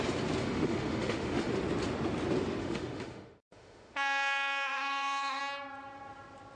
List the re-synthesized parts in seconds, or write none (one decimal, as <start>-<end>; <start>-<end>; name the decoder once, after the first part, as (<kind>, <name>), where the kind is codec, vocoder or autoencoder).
0.4-1.5 (autoencoder, DAC-VAE); 2.6-5.4